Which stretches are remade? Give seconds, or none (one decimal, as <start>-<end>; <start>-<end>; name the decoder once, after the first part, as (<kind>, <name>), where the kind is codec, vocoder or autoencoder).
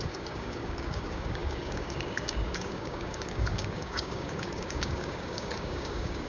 0.0-6.3 (codec, DAC)